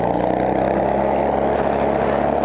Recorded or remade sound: recorded